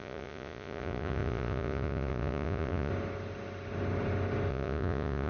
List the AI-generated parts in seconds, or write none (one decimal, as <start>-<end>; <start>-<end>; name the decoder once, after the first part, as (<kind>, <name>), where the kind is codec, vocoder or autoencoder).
0.0-2.9 (vocoder, Vocos); 4.5-5.3